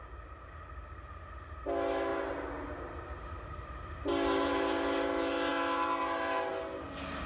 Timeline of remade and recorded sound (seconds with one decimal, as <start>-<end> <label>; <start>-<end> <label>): 0.0-7.3 recorded